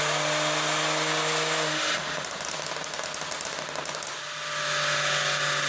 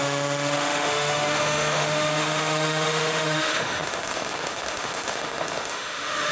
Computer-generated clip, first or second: second